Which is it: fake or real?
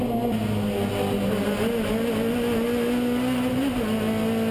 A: real